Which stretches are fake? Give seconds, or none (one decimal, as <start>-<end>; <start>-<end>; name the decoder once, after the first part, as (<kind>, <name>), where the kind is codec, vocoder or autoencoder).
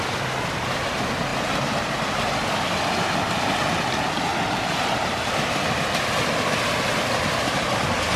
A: none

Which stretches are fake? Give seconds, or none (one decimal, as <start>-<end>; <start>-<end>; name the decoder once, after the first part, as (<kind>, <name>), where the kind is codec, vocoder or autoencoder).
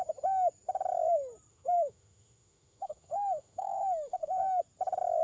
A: 1.5-4.6 (autoencoder, DAC-VAE)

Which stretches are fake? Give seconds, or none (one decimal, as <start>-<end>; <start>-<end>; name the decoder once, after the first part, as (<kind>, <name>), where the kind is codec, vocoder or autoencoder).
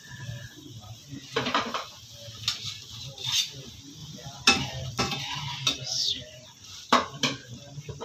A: 4.0-5.0 (vocoder, BigVGAN v2); 6.0-8.0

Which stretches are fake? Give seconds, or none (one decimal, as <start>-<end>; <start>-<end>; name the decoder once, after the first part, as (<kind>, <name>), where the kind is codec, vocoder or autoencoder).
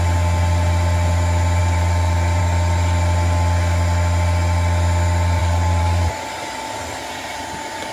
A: 1.6-2.4 (vocoder, BigVGAN v2); 5.4-6.1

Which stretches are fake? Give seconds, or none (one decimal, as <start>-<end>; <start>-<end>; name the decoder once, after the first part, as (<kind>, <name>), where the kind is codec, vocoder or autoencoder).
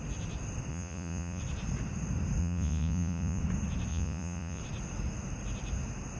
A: 0.7-1.4 (vocoder, Vocos); 2.4-3.4; 3.9-4.6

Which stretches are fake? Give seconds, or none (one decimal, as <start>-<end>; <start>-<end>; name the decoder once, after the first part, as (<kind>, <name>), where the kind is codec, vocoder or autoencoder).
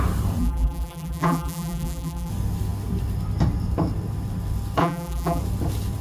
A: 0.4-2.3 (vocoder, BigVGAN v2); 4.8-5.4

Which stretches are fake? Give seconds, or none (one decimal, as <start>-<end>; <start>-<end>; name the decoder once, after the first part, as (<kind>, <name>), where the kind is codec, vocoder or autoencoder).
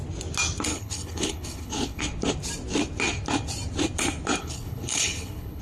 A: 0.7-2.0 (codec, HILCodec); 4.4-5.6